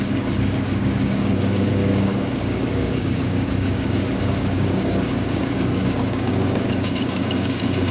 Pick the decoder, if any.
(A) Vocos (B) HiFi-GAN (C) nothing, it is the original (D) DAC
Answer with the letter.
D